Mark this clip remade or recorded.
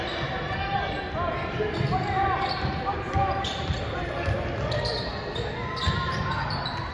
recorded